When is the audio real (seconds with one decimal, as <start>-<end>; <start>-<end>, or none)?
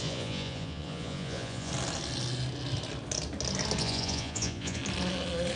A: 1.7-3.8; 4.8-5.6